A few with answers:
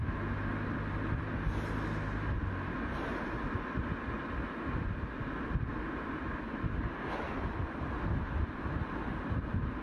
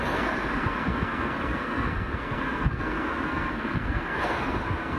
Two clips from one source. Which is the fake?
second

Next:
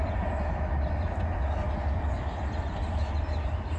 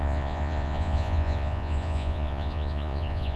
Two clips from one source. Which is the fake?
second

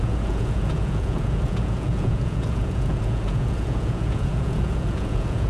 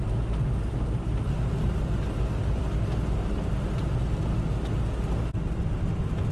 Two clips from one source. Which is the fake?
first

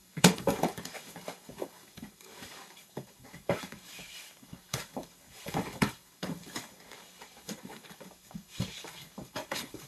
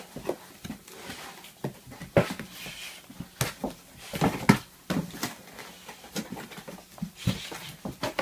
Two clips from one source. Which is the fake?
first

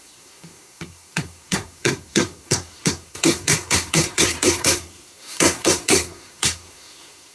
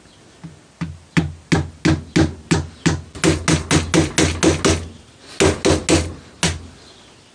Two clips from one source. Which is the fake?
first